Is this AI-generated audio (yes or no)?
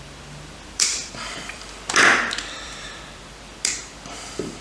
yes